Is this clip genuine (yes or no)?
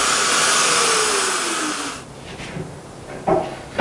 yes